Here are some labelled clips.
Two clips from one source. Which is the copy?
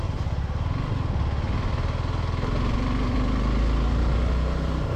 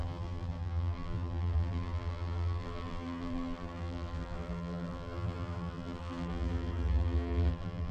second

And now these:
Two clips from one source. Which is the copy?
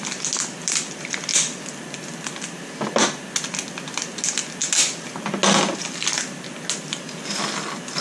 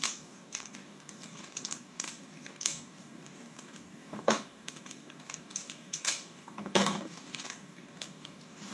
second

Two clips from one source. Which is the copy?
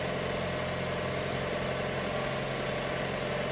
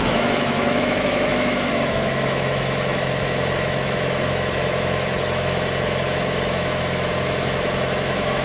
second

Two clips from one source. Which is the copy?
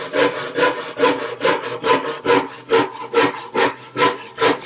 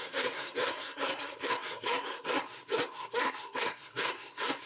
second